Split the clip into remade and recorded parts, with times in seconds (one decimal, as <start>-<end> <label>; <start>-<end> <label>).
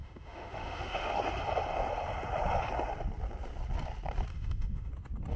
0.0-1.2 remade; 1.2-4.3 recorded; 4.3-4.9 remade; 4.9-5.4 recorded